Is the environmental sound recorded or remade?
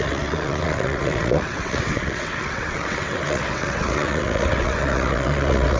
remade